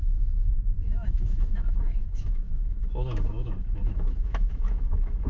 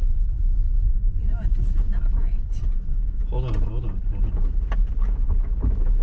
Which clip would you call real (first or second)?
second